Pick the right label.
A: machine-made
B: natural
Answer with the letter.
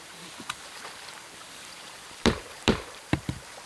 A